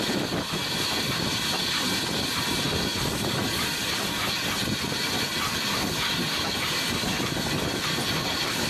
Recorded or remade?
recorded